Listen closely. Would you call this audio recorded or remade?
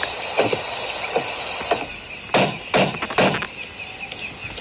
recorded